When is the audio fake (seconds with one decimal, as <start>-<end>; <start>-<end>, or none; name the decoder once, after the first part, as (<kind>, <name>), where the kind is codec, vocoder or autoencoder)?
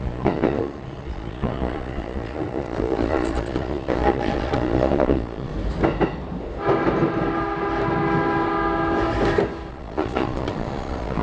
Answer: 0.0-5.5 (vocoder, Vocos); 9.7-11.2